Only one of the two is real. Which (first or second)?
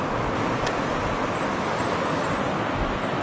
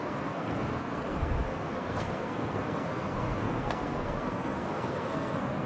first